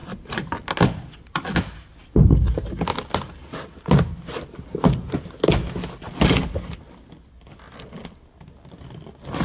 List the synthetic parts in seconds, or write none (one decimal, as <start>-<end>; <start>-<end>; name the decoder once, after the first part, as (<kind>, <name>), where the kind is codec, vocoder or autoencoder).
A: none